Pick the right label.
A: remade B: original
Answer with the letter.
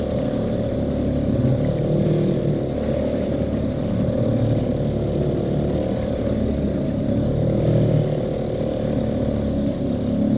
B